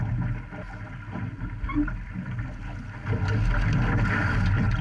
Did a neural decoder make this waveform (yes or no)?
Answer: no